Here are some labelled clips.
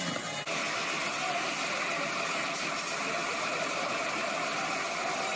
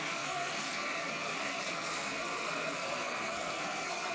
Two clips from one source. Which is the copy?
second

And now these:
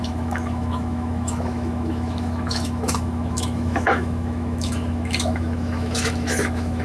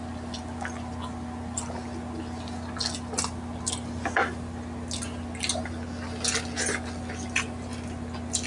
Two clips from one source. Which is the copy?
first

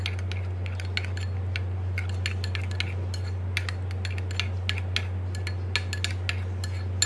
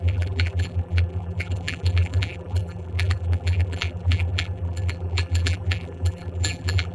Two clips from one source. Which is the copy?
second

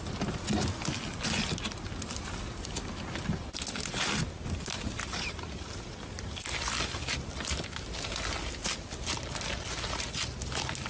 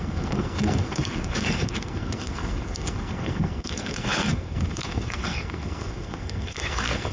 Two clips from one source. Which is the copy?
second